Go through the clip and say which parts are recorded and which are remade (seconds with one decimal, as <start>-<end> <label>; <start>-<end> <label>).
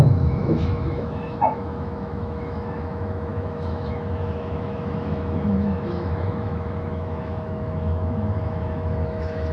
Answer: 0.0-9.5 remade